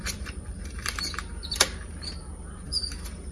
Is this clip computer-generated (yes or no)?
yes